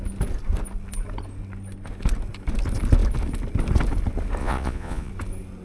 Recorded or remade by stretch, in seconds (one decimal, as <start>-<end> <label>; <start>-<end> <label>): 0.0-4.4 recorded; 4.4-5.1 remade; 5.1-5.6 recorded